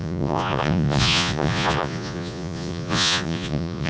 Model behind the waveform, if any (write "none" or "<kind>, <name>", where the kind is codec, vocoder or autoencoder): vocoder, Vocos